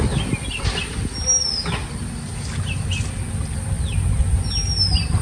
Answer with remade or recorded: recorded